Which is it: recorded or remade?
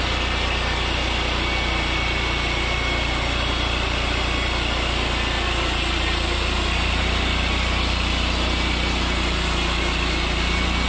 recorded